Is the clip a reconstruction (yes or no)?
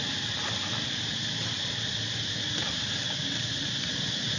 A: no